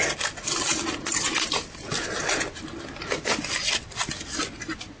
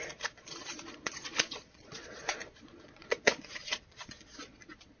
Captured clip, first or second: first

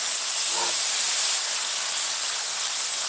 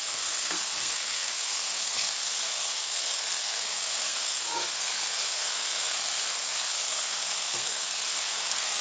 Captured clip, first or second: first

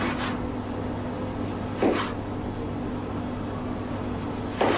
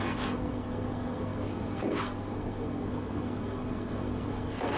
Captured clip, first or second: first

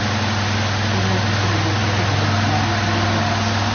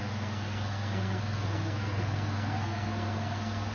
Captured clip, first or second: first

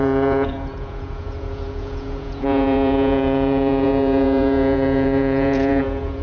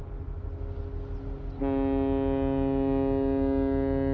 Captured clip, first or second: second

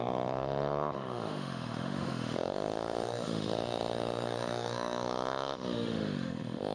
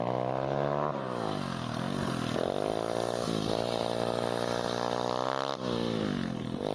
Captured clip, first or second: second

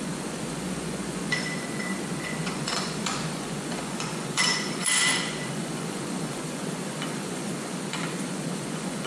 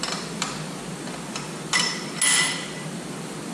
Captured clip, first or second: second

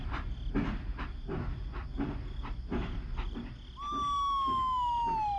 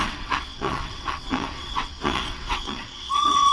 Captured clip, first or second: first